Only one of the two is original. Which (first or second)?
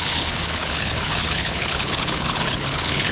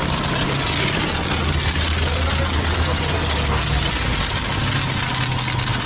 second